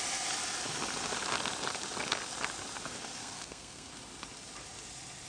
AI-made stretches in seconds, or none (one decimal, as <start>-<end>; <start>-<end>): 3.2-3.9